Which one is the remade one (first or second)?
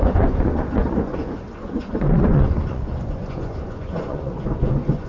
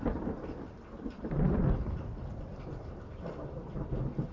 first